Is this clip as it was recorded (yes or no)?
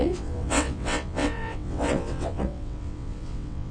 no